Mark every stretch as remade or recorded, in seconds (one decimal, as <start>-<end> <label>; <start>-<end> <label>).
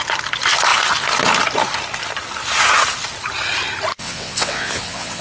0.0-3.9 recorded; 3.9-5.2 remade